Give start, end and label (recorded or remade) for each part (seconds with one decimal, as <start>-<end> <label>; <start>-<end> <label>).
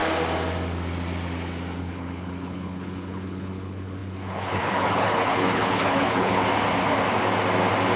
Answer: 0.0-1.8 recorded; 1.8-6.4 remade; 6.4-8.0 recorded